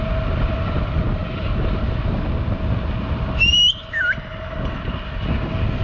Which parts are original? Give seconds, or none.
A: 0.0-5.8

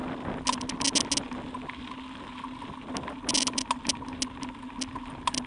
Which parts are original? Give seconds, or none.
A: 0.0-5.5

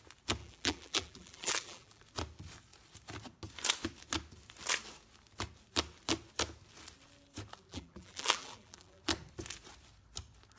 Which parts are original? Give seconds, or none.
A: 0.0-0.4; 2.0-7.7; 9.0-10.6

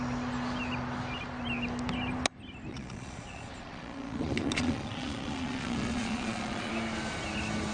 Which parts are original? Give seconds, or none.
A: 0.0-2.7; 6.7-7.7

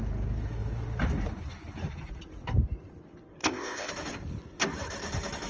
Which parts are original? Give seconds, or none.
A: 0.0-3.4; 3.9-5.5